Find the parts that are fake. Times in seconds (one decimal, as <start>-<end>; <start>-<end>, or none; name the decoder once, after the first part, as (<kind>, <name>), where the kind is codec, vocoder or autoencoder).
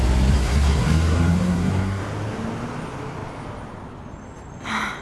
0.4-2.0 (codec, SNAC)